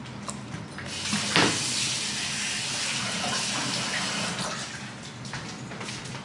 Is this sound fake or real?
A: real